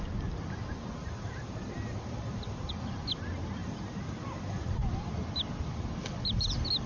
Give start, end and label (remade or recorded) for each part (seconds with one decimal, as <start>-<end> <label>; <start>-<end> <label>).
0.0-1.0 recorded; 1.0-2.7 remade; 2.7-3.6 recorded; 3.6-4.7 remade; 4.7-6.9 recorded